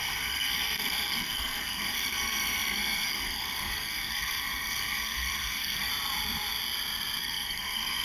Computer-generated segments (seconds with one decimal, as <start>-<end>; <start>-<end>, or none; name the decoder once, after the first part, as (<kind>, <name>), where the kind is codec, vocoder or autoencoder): 0.0-5.9 (codec, SNAC); 7.2-8.0

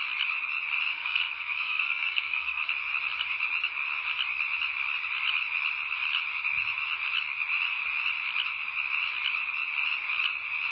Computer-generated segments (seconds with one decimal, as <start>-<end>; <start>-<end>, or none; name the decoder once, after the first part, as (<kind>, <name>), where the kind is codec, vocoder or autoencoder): 0.9-2.7 (codec, SNAC)

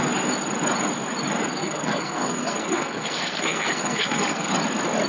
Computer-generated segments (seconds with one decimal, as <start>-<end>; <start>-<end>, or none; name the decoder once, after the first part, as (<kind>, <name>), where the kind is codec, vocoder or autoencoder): 1.6-4.5 (codec, SNAC)